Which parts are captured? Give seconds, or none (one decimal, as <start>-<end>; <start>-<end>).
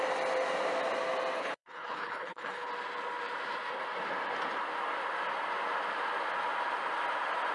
0.0-1.4; 2.7-7.5